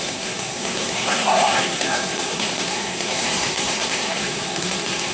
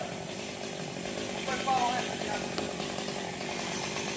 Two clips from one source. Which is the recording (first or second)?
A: second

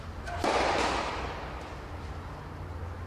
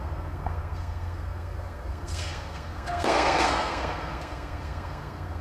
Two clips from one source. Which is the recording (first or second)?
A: first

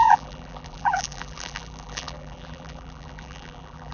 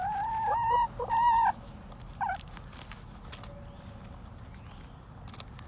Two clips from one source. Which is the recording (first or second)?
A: second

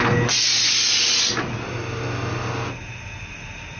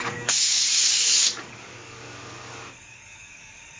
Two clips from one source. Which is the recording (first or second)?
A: first